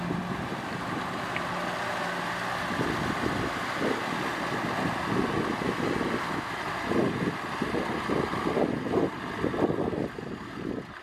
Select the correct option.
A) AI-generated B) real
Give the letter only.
B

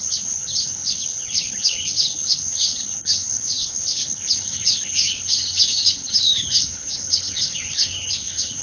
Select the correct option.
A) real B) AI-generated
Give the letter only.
B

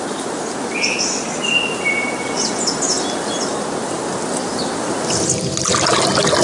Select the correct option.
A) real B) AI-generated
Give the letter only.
A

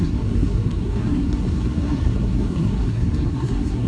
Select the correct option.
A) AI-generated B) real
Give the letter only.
A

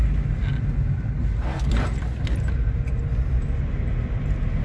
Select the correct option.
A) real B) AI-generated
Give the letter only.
A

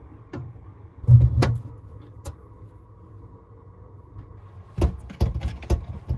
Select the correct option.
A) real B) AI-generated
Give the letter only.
A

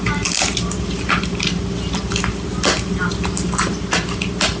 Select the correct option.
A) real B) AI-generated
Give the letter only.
A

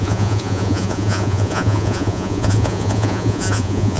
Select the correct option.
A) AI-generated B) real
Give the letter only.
A